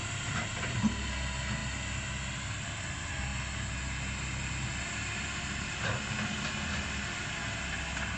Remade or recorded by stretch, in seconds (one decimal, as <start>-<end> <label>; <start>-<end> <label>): 0.0-8.2 recorded